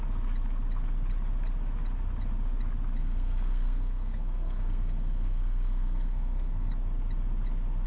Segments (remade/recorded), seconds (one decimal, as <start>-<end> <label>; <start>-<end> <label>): 0.0-3.0 recorded; 3.0-6.7 remade; 6.7-7.9 recorded